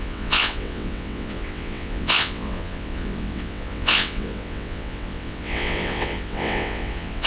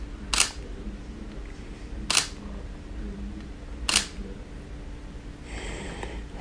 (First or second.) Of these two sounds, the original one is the second